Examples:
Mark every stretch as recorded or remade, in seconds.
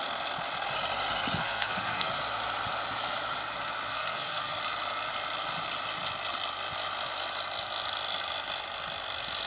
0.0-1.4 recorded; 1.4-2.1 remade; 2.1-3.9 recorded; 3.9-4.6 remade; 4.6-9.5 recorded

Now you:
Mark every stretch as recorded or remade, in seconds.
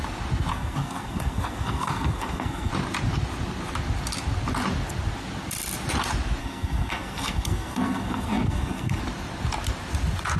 0.0-0.5 recorded; 0.5-2.7 remade; 2.7-6.4 recorded; 6.4-9.0 remade; 9.0-10.4 recorded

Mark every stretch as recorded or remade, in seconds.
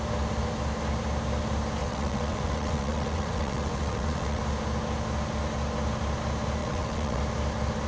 0.0-1.8 recorded; 1.8-4.4 remade; 4.4-6.6 recorded; 6.6-7.2 remade; 7.2-7.9 recorded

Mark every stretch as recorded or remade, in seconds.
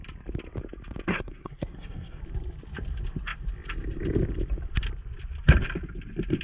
0.0-1.1 recorded; 1.1-2.2 remade; 2.2-6.4 recorded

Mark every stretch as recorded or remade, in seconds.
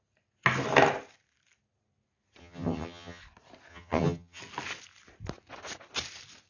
0.0-2.4 recorded; 2.4-3.2 remade; 3.2-3.7 recorded; 3.7-4.4 remade; 4.4-6.5 recorded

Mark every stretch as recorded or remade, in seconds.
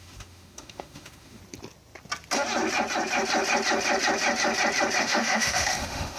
0.0-1.4 remade; 1.4-5.0 recorded; 5.0-6.2 remade